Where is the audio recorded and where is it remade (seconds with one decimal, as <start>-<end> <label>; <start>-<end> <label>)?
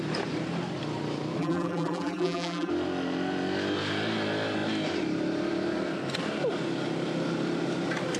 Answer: 0.0-1.4 recorded; 1.4-2.7 remade; 2.7-8.2 recorded